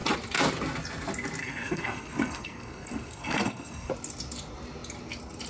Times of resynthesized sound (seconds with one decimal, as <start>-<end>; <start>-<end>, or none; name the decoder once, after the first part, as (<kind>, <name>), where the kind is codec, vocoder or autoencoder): 1.4-3.9 (codec, SNAC)